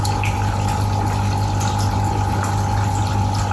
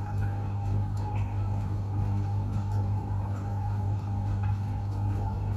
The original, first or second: first